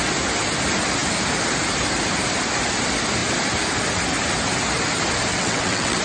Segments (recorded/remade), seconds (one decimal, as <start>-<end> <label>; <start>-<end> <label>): 0.0-5.3 recorded; 5.3-6.0 remade